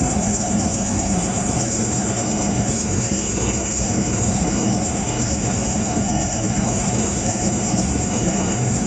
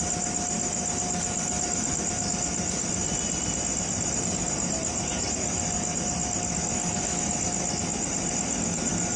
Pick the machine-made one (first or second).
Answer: first